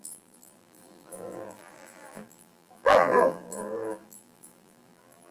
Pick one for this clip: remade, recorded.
remade